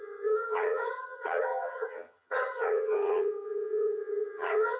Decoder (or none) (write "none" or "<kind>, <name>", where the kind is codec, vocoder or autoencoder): vocoder, HiFi-GAN